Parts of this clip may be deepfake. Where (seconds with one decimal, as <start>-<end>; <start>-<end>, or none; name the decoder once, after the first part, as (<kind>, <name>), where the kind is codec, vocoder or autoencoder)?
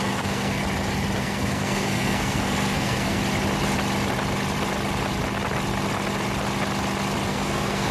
0.0-0.6 (codec, SNAC); 1.2-3.2; 7.3-7.9